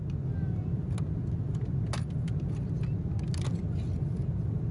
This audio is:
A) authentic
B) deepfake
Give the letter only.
A